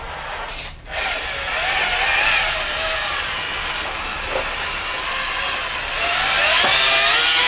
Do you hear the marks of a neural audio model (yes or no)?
no